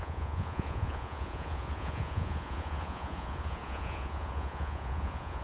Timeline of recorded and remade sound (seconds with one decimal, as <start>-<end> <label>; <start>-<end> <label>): 0.0-5.4 remade